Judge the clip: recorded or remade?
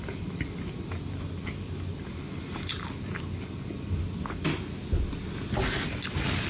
recorded